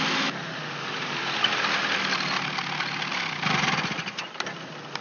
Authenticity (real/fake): real